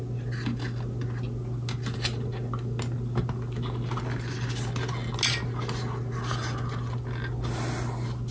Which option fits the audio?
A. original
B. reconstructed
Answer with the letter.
A